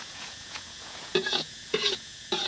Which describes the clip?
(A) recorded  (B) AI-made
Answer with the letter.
B